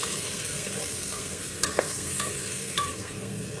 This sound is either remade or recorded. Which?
remade